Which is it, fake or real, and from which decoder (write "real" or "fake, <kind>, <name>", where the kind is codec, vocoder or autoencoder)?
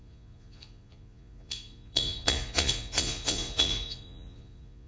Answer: fake, vocoder, Vocos